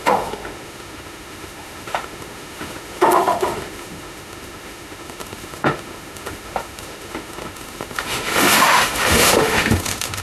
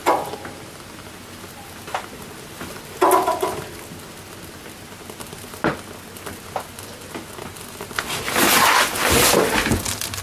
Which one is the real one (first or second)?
second